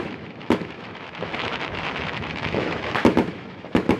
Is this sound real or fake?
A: fake